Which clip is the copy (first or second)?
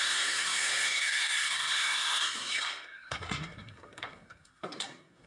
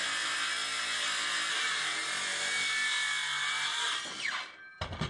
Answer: first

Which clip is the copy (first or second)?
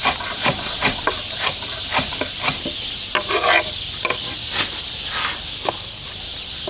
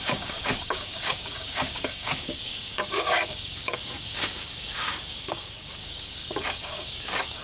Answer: second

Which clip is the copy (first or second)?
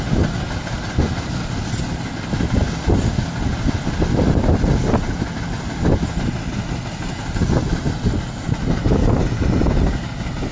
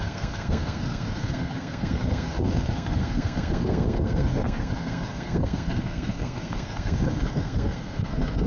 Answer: second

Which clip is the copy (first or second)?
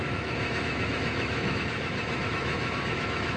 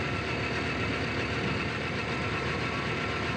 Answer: first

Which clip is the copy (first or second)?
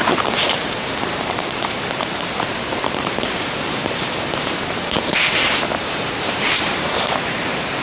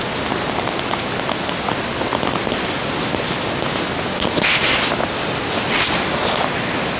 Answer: first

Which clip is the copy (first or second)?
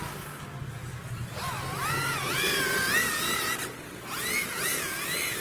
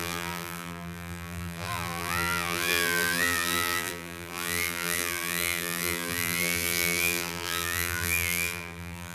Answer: second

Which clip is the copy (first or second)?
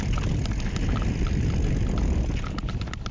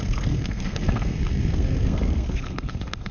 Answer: second